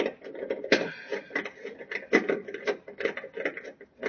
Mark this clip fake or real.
real